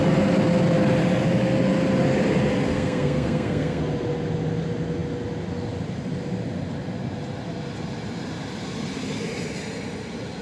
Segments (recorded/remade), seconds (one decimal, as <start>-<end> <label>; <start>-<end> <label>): 0.0-2.7 recorded; 2.7-3.8 remade; 3.8-10.4 recorded